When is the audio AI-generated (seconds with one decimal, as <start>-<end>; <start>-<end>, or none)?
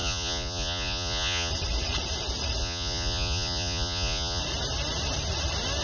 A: 0.0-1.5; 2.6-4.4